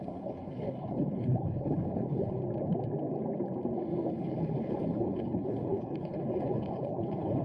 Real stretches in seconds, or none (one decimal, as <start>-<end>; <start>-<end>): 2.4-4.1